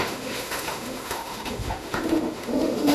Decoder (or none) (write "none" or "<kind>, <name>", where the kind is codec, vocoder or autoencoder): autoencoder, DAC-VAE